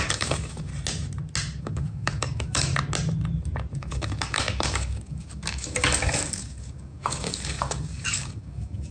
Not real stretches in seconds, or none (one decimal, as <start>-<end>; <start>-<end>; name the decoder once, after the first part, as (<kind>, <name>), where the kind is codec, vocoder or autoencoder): 0.0-0.7 (codec, DAC); 1.6-2.7; 3.8-8.9